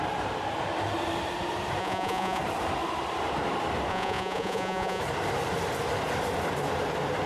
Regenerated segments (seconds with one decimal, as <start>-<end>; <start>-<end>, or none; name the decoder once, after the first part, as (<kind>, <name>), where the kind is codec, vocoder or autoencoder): 1.8-2.4 (vocoder, Vocos); 3.9-5.0